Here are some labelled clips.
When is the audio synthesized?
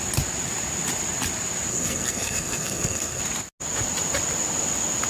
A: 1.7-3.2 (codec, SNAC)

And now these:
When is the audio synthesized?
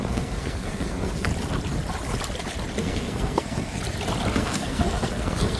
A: 0.0-1.3 (codec, SNAC); 2.8-3.8; 4.3-5.6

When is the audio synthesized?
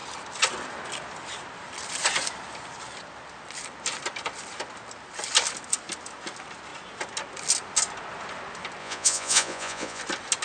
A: 8.8-10.0 (vocoder, Vocos)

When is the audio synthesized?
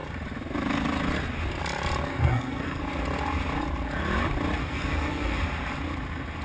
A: 2.1-2.8 (codec, SNAC); 4.6-5.4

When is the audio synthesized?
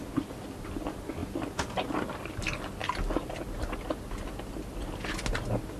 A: none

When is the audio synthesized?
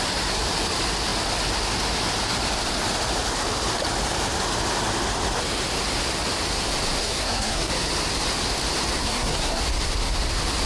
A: 7.0-7.7 (codec, SNAC); 9.0-9.6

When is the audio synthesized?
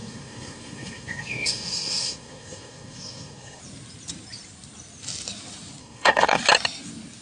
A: 0.0-3.6 (codec, SNAC); 5.8-6.4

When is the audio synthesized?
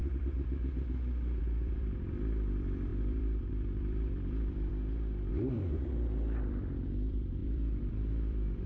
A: 1.4-4.7 (vocoder, BigVGAN v2); 5.3-8.7